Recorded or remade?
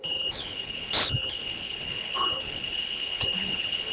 remade